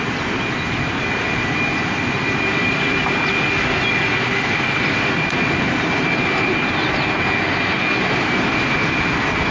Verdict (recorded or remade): recorded